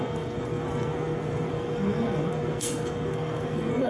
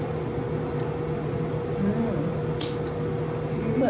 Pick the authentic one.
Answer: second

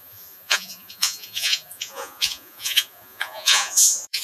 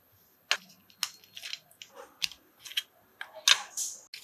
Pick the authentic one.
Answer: second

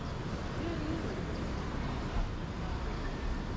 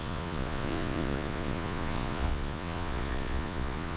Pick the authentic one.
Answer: first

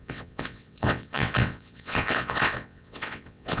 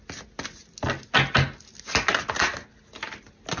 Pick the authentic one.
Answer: second